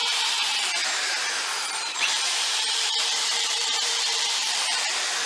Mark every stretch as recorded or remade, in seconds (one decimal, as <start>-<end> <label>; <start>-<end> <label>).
0.0-0.7 remade; 0.7-1.6 recorded; 1.6-4.8 remade; 4.8-5.3 recorded